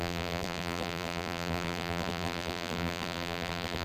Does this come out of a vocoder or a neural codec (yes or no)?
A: yes